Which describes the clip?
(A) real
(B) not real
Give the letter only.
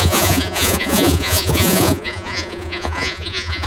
B